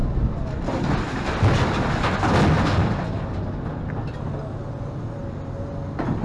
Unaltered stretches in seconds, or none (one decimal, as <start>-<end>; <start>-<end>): 0.0-6.2